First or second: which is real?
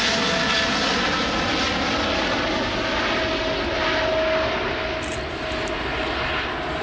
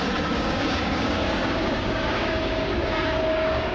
first